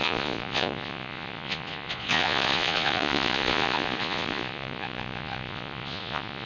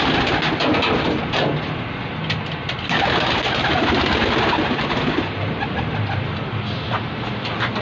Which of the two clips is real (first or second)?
second